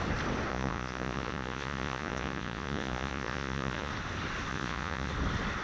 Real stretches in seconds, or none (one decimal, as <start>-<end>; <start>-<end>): 0.0-0.5; 3.9-4.5; 5.1-5.6